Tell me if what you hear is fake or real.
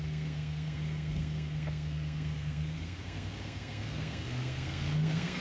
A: fake